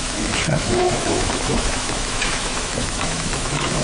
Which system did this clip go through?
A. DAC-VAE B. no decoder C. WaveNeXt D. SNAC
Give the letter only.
A